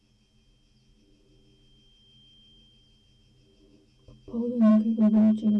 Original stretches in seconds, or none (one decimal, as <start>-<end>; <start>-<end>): 0.0-5.6